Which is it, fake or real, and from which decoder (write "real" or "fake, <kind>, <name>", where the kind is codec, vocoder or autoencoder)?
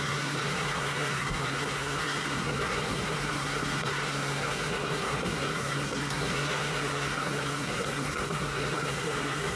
fake, codec, SNAC